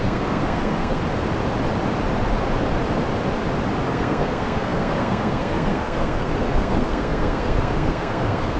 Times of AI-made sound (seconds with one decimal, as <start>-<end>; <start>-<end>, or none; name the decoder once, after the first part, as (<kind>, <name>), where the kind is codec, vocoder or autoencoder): 0.0-1.0 (codec, SNAC); 3.9-8.6